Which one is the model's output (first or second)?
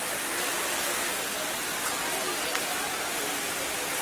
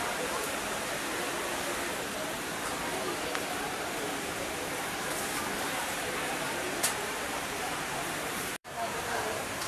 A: second